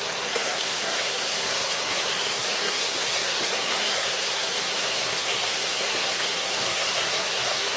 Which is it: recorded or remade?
remade